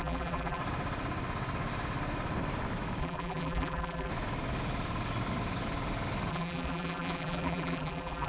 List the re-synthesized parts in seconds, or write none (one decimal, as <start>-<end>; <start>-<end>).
0.0-0.6; 3.0-4.1; 6.3-8.3